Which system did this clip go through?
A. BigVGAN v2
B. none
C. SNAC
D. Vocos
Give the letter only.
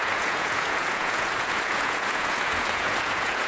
D